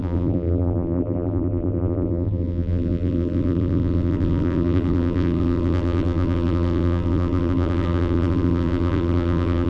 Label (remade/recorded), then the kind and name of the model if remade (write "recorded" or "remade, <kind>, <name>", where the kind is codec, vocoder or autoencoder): remade, vocoder, BigVGAN v2